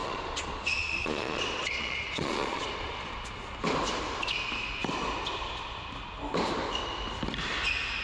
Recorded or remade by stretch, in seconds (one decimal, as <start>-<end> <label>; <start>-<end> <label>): 0.0-3.1 remade; 3.1-8.0 recorded